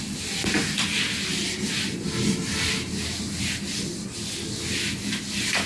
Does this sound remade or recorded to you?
recorded